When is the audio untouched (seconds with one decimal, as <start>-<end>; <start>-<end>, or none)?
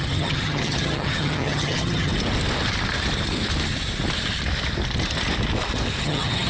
2.1-6.0